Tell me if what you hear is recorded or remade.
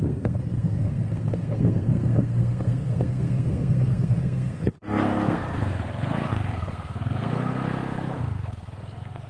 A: remade